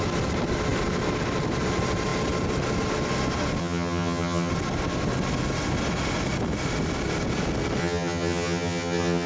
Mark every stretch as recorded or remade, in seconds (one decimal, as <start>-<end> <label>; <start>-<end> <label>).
0.0-3.6 recorded; 3.6-4.5 remade; 4.5-7.8 recorded; 7.8-9.3 remade